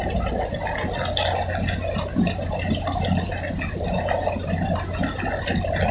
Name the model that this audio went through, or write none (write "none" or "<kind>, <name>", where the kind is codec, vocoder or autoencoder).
none